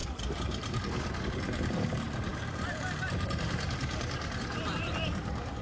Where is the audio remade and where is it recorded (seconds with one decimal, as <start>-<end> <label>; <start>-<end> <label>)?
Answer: 0.0-1.3 recorded; 1.3-5.6 remade